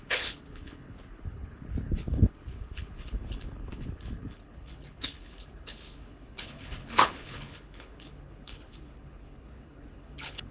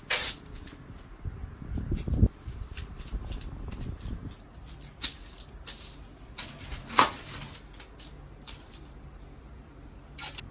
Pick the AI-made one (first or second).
first